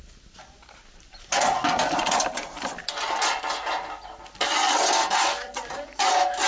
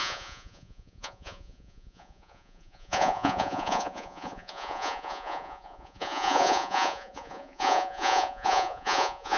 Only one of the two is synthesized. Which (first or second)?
second